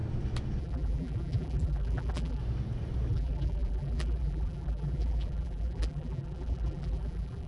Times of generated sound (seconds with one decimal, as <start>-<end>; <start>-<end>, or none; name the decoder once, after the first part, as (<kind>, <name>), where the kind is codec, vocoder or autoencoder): 0.6-2.4 (vocoder, BigVGAN v2); 3.1-7.5